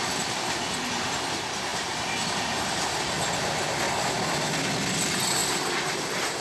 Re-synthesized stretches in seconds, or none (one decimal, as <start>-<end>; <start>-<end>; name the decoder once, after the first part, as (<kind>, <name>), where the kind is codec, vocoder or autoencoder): none

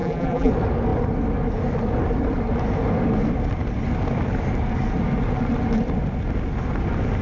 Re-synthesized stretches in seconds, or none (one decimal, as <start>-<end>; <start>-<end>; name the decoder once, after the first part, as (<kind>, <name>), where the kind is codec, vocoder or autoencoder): 0.0-0.5 (vocoder, BigVGAN v2)

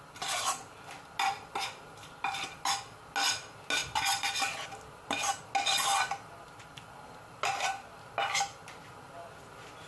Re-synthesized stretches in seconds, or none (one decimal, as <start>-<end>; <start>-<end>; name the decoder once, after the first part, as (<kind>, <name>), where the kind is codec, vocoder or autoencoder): none

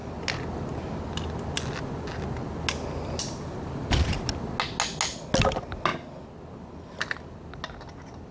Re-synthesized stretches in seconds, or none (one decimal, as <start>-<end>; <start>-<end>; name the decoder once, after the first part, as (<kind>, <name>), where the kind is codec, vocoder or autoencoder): none

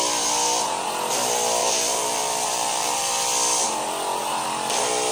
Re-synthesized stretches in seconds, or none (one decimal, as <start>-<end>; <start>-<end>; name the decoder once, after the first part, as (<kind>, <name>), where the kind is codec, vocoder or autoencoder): 1.6-3.1 (vocoder, BigVGAN v2)

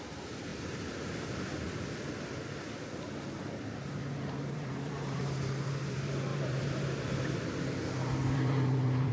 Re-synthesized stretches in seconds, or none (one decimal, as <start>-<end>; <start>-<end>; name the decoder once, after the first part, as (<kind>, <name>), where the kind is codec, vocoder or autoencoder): 0.0-0.5 (vocoder, BigVGAN v2); 2.0-9.1

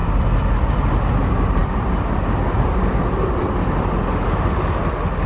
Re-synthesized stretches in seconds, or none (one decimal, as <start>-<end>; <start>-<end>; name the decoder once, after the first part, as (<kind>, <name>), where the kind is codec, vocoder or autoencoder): 0.0-0.7 (vocoder, BigVGAN v2); 1.6-4.8

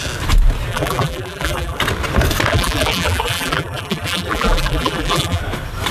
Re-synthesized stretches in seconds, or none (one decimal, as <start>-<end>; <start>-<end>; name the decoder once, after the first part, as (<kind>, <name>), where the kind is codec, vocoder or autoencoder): 0.7-1.8 (vocoder, BigVGAN v2); 2.5-5.4